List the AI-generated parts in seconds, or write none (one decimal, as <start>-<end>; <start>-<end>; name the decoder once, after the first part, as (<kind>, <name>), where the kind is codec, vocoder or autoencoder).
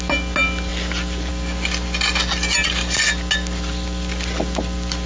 none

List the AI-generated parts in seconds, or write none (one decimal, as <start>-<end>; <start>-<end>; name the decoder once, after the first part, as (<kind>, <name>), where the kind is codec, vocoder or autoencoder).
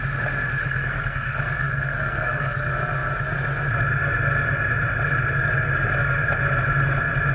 0.6-2.6 (codec, SNAC)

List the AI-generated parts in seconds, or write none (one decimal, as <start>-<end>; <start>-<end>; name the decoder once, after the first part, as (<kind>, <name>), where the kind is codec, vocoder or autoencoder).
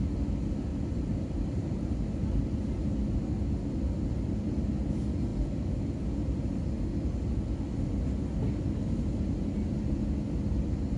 0.7-2.4 (vocoder, BigVGAN v2)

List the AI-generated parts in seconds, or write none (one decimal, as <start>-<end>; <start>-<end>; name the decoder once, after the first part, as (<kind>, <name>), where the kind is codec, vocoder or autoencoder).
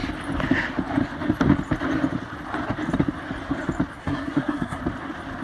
4.0-4.8 (codec, SNAC)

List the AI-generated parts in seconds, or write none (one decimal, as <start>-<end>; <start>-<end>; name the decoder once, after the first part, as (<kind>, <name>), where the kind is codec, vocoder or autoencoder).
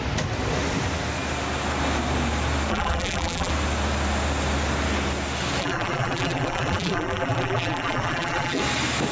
2.7-3.5 (vocoder, BigVGAN v2); 5.6-8.6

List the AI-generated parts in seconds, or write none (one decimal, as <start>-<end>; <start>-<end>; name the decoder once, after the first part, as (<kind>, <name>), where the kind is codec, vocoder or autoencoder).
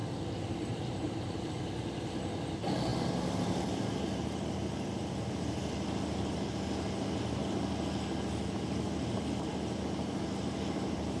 0.0-1.5 (vocoder, BigVGAN v2); 2.9-6.5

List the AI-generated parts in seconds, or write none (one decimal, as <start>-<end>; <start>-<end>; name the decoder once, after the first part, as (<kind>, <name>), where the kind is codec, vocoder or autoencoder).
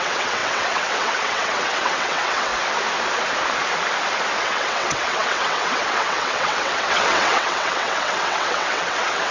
0.0-2.5 (vocoder, WaveNeXt); 4.4-9.3